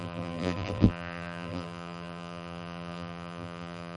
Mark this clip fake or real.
fake